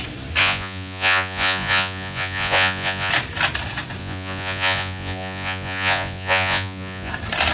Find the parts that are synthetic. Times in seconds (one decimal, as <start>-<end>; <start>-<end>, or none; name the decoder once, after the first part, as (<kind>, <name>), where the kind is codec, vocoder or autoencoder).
0.4-3.1 (vocoder, Vocos); 4.0-7.1

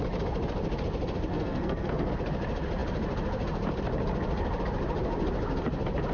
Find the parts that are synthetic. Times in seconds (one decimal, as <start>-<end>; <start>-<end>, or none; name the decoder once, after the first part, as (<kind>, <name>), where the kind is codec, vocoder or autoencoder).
1.3-2.1 (codec, SNAC)

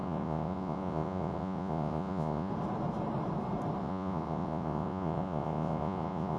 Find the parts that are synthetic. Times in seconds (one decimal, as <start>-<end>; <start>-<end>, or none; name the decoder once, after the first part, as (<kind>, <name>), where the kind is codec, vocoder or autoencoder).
0.0-2.5 (vocoder, Vocos); 3.8-6.4